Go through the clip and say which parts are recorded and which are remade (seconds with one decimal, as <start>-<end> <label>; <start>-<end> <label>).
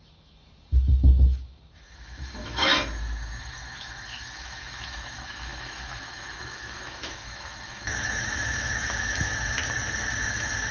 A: 0.0-2.7 remade; 2.7-3.4 recorded; 3.4-9.6 remade; 9.6-10.2 recorded; 10.2-10.7 remade